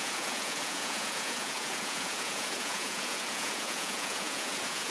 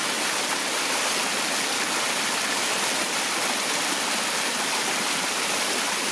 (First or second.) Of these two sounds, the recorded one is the second